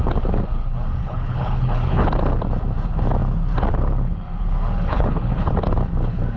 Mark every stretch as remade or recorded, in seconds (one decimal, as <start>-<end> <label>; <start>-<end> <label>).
0.0-1.0 recorded; 1.0-2.1 remade; 2.1-4.9 recorded; 4.9-5.5 remade; 5.5-6.4 recorded